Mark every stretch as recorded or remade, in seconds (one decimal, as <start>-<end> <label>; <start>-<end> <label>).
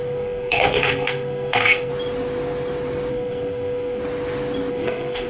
0.0-1.9 remade; 1.9-3.1 recorded; 3.1-4.0 remade; 4.0-4.7 recorded; 4.7-5.3 remade